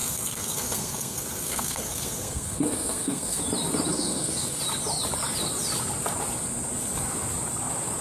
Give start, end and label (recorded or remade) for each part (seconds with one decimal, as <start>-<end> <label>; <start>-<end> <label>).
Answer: 0.0-3.4 remade; 3.4-3.9 recorded; 3.9-4.6 remade; 4.6-8.0 recorded